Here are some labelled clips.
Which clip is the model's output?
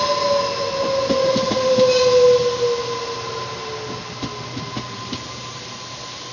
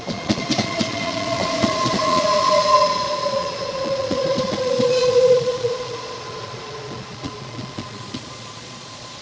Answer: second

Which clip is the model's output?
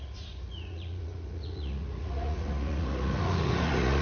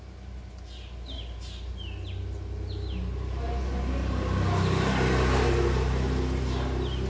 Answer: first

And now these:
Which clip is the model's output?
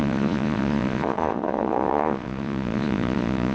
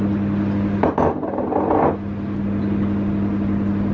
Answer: first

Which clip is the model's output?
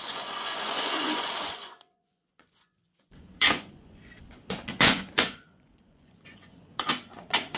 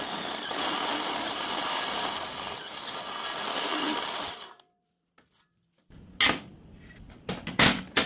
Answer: first